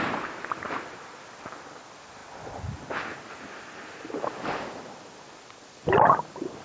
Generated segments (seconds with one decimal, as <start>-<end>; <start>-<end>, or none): none